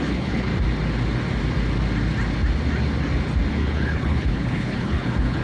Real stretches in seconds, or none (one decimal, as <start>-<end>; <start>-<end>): 0.5-3.5